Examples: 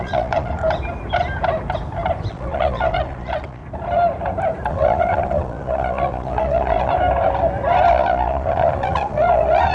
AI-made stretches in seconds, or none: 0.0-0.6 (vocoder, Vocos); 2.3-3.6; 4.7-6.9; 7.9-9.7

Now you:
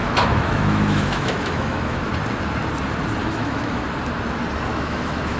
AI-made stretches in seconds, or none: 0.0-2.1 (autoencoder, DAC-VAE); 3.2-3.8; 4.7-5.4